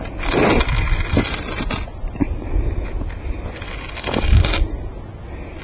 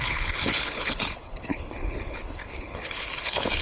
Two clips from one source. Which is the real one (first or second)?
first